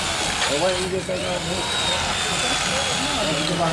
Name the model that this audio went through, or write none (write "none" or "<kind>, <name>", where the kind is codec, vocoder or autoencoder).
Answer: none